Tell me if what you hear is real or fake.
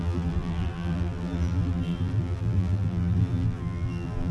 fake